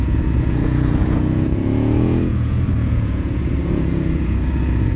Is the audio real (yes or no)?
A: no